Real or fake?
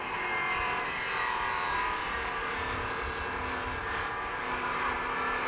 real